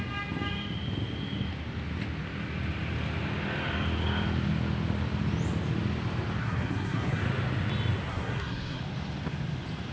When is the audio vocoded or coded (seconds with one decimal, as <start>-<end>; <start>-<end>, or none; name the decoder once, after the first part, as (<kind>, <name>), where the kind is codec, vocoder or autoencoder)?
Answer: 6.4-7.2 (codec, SNAC); 8.1-8.8